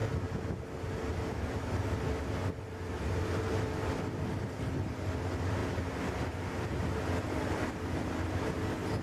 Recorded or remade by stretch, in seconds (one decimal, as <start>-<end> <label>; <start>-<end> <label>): 0.0-9.0 recorded